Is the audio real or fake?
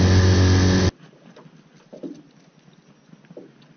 real